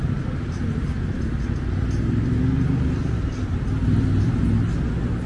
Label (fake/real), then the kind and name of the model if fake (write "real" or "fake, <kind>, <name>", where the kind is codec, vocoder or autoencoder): real